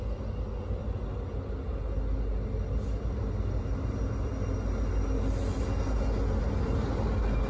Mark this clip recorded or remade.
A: recorded